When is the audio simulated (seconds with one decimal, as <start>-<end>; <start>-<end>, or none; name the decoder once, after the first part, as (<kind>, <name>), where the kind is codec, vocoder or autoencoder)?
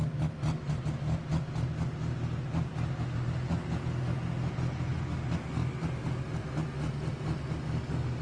none